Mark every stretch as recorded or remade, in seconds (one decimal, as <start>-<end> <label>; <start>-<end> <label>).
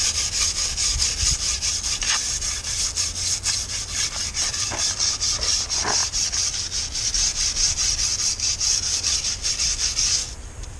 0.0-10.8 recorded